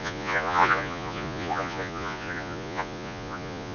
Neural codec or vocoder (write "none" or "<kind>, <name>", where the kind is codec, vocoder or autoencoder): vocoder, Vocos